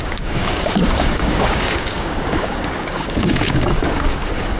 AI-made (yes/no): yes